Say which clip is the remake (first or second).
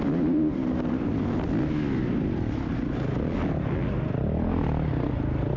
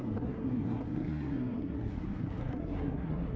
second